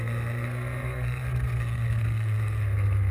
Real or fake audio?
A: fake